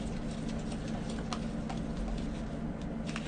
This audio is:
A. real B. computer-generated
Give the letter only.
A